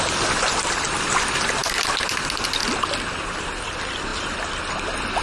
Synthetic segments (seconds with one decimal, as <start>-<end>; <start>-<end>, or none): none